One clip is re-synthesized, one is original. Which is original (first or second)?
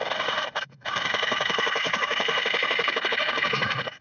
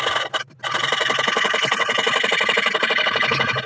second